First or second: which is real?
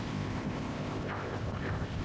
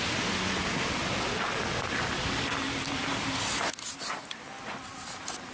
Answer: second